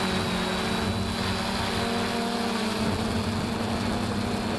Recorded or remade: recorded